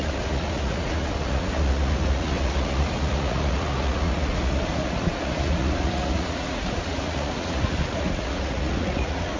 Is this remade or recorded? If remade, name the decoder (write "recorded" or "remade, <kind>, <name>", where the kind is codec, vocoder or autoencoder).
remade, vocoder, Vocos